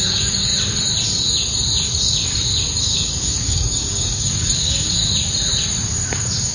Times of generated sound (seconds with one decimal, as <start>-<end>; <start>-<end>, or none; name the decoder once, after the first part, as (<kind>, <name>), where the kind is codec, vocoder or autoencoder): 0.0-0.5 (codec, DAC); 2.8-5.0